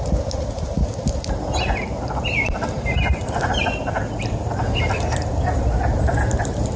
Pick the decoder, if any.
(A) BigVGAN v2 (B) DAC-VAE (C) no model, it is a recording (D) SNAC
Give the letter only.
A